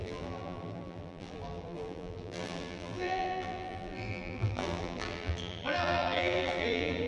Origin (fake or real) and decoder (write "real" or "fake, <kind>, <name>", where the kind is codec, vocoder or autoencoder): fake, vocoder, BigVGAN v2